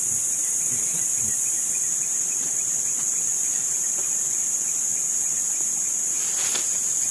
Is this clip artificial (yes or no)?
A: no